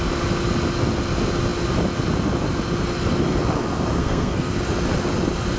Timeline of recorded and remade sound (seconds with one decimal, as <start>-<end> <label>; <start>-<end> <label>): 0.0-4.0 recorded; 4.0-4.5 remade; 4.5-5.6 recorded